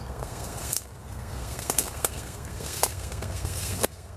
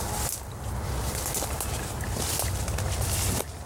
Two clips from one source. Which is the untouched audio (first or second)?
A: second